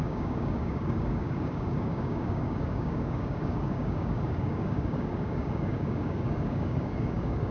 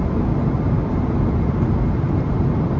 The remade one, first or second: first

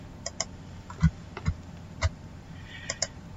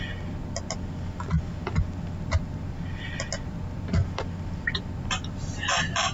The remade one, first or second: first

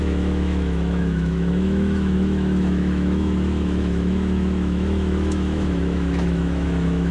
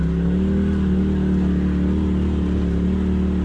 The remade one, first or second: first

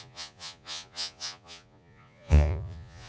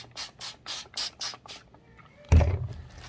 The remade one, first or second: first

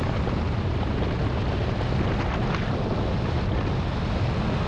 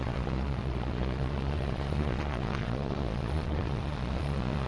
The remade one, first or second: second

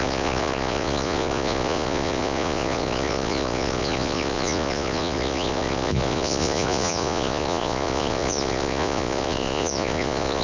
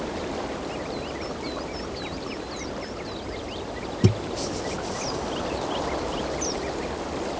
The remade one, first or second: first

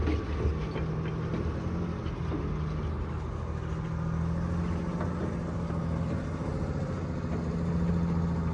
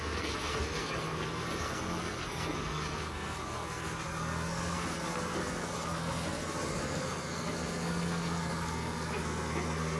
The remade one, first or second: second